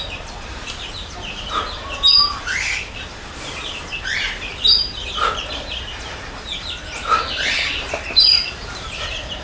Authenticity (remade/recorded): remade